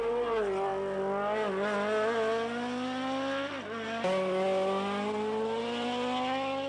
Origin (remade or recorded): recorded